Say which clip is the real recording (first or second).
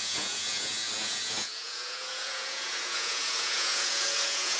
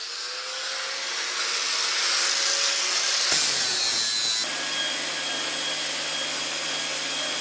second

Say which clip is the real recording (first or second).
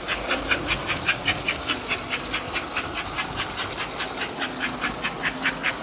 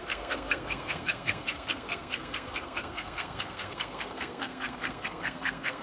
first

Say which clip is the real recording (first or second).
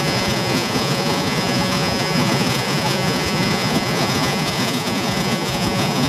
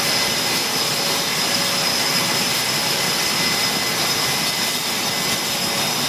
second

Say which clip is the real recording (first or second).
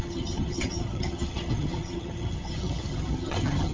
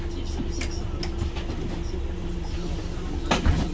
second